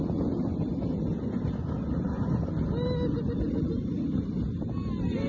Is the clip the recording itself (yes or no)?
yes